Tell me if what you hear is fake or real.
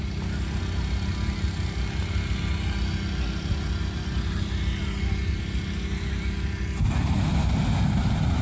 real